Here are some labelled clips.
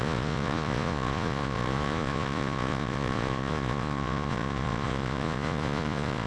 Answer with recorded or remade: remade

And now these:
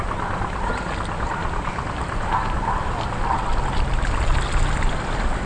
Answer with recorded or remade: recorded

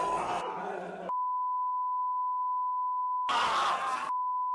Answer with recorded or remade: recorded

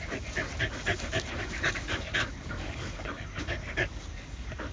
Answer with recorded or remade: remade